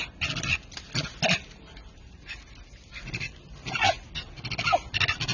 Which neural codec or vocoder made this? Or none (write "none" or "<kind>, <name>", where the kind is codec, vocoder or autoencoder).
none